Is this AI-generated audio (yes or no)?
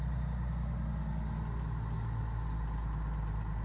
no